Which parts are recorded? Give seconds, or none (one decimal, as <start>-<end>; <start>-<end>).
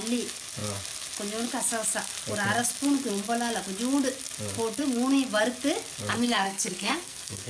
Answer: 0.0-6.1